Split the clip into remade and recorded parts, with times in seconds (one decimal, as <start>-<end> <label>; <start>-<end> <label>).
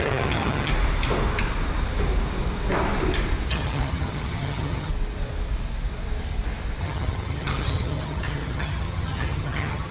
0.0-0.7 remade; 0.7-3.5 recorded; 3.5-4.9 remade; 4.9-6.8 recorded; 6.8-9.9 remade